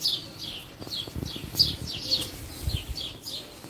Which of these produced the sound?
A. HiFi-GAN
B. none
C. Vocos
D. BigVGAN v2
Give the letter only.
B